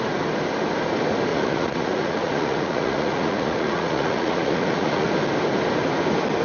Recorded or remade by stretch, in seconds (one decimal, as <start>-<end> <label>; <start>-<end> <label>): 0.0-1.3 recorded; 1.3-5.1 remade; 5.1-6.4 recorded